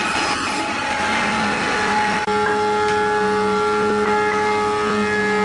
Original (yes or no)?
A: yes